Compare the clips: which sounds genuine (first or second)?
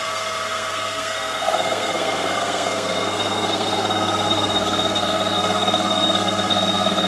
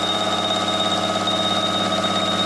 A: second